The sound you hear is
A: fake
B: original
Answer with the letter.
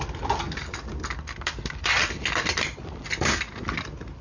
B